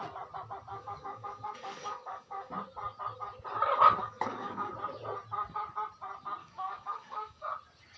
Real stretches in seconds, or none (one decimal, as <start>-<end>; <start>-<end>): 0.0-0.7; 2.5-4.0; 4.7-6.4; 7.5-8.0